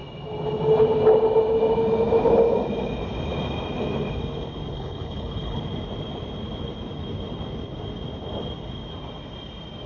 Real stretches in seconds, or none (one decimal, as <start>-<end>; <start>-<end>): 0.0-4.7; 5.6-9.9